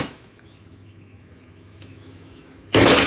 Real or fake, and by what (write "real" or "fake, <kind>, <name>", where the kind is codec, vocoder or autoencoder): fake, autoencoder, DAC-VAE